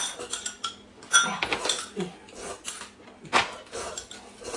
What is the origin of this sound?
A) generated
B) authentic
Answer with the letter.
B